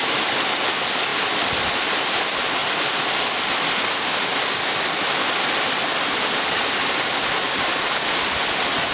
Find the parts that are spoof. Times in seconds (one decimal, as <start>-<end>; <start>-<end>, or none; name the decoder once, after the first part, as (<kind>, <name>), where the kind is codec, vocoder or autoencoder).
none